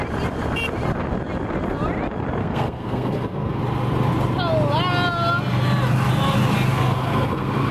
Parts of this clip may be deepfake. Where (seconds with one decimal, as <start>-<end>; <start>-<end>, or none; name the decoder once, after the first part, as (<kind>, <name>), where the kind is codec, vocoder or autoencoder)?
2.4-3.6 (codec, SNAC); 6.7-7.7